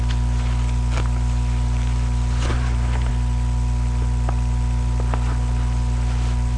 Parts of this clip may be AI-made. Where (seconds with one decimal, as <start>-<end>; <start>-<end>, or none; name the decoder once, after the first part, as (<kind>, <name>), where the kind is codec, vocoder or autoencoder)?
2.5-3.1 (vocoder, BigVGAN v2)